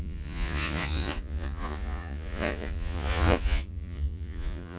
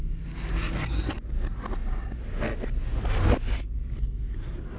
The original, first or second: second